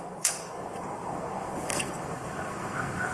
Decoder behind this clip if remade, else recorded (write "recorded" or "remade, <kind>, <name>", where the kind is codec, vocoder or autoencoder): remade, codec, SNAC